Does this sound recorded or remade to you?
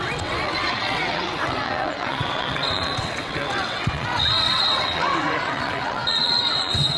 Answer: remade